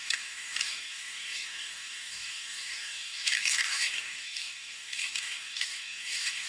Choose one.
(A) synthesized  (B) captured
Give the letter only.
A